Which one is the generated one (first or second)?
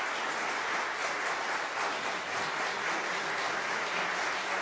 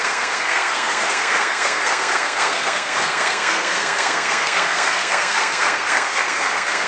second